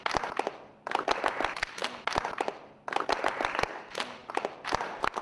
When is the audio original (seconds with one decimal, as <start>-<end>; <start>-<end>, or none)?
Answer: 0.0-5.2